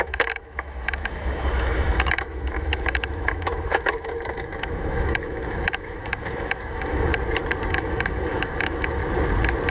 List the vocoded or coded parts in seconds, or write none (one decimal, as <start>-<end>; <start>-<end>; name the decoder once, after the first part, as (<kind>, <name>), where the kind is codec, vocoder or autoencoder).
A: 0.0-7.1 (autoencoder, DAC-VAE); 7.6-9.0